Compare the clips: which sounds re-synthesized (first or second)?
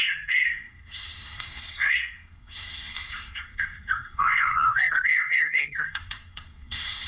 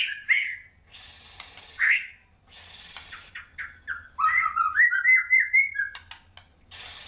first